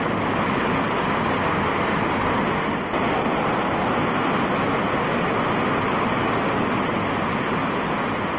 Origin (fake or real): real